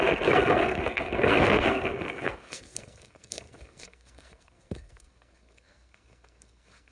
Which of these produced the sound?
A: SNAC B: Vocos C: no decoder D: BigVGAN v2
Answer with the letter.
A